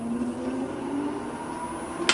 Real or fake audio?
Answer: real